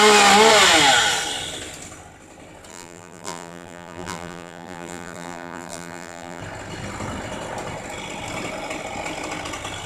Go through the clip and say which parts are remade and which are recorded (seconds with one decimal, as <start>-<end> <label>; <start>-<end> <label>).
0.0-2.7 recorded; 2.7-6.4 remade; 6.4-9.9 recorded